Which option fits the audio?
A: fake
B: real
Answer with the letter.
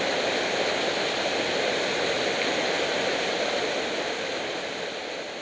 B